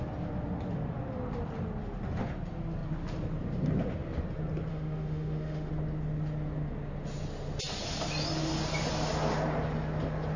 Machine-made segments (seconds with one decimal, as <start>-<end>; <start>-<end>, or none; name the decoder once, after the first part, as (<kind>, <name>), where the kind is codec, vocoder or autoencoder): 4.7-5.7 (autoencoder, DAC-VAE)